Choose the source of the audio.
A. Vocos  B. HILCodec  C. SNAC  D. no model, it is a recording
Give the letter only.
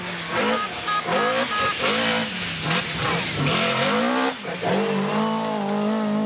D